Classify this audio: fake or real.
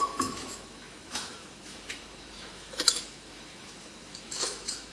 fake